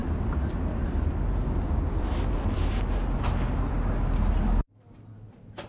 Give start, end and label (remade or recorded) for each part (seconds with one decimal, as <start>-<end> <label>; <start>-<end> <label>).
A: 0.0-5.7 recorded